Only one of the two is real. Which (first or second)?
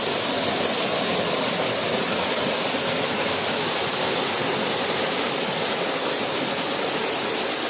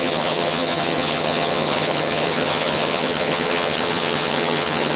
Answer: first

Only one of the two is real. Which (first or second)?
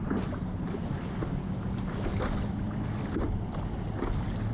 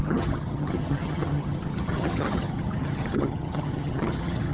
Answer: first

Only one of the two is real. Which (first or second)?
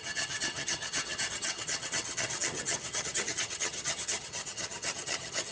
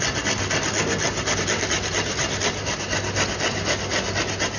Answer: second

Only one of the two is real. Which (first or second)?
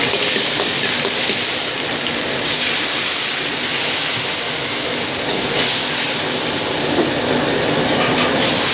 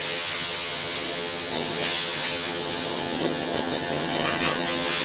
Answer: first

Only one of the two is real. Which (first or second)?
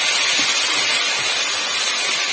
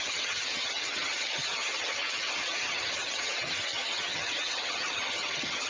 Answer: first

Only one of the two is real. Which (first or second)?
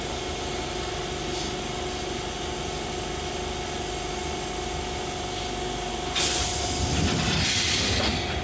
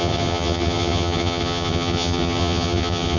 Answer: first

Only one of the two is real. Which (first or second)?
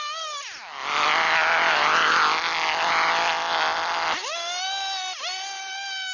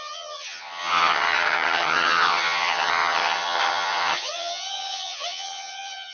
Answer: first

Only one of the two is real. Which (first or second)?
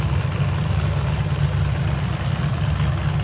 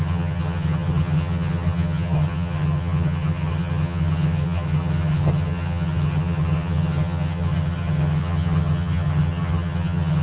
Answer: first